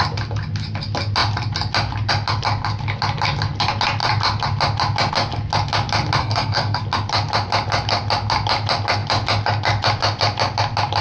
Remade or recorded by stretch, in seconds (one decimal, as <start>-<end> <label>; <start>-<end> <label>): 0.0-6.2 recorded; 6.2-6.8 remade; 6.8-11.0 recorded